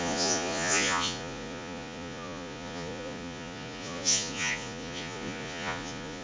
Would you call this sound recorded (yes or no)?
no